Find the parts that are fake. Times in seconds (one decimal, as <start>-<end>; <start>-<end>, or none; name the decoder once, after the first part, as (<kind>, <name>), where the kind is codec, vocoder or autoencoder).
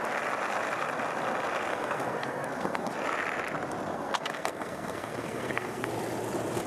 1.7-2.9 (codec, SNAC); 3.9-5.9